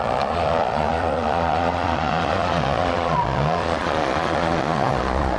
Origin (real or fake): fake